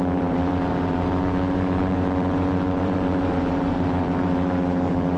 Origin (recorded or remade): remade